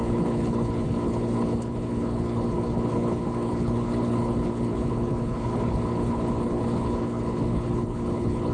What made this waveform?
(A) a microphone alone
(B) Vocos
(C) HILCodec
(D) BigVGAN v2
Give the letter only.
C